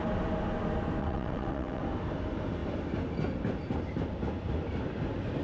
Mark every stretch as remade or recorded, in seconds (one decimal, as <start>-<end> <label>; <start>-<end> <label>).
0.0-1.0 recorded; 1.0-1.8 remade; 1.8-5.4 recorded